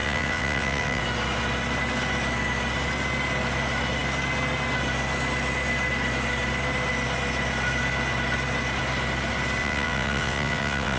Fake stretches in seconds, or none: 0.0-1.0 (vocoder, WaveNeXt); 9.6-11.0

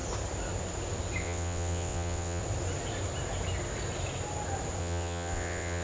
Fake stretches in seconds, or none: 1.2-2.4 (vocoder, WaveNeXt); 4.8-5.8